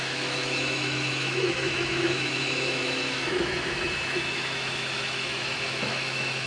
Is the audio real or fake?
fake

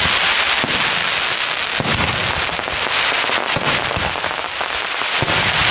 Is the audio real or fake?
real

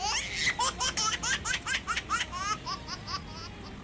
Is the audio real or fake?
real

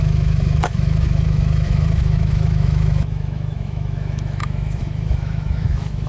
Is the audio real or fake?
fake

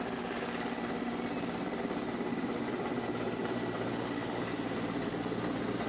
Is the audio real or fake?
real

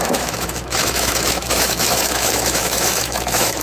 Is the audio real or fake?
fake